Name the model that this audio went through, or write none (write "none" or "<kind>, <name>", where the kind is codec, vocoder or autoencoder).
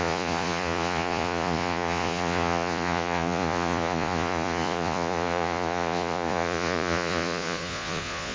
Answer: vocoder, Vocos